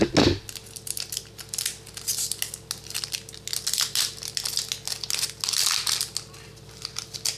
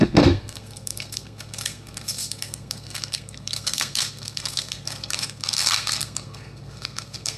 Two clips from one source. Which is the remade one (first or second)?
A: second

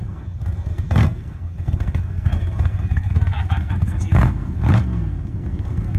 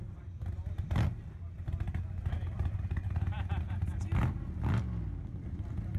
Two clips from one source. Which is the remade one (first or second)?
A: first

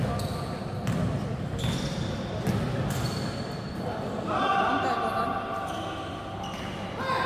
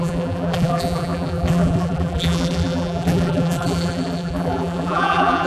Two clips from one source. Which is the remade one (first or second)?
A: second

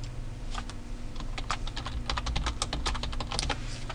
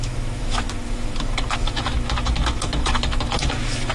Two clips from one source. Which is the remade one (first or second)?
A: second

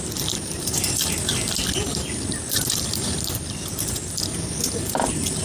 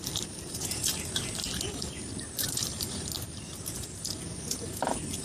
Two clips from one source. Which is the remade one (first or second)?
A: first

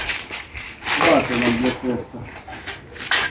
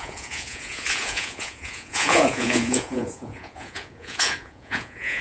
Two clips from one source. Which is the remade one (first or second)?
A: second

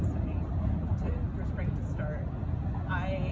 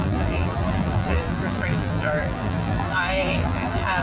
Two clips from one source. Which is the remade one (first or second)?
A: second